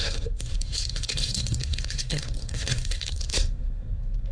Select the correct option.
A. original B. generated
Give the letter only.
B